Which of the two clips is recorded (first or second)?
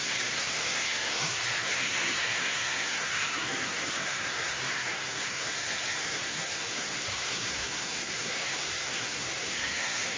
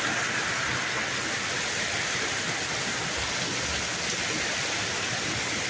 second